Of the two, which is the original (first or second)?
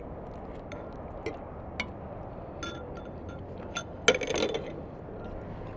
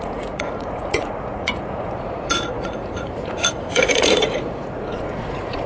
first